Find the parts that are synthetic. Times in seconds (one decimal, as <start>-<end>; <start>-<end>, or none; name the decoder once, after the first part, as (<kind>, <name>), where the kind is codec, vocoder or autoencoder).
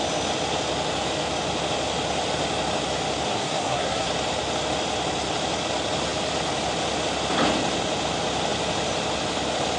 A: 3.3-4.1 (codec, SNAC)